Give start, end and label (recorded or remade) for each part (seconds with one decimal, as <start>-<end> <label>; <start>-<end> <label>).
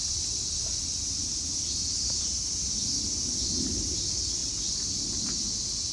0.0-5.9 recorded